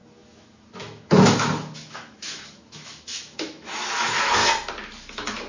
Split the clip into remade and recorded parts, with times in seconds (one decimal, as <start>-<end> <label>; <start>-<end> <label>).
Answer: 0.0-4.4 remade; 4.4-5.1 recorded; 5.1-5.5 remade